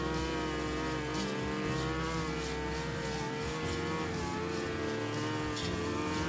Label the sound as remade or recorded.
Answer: recorded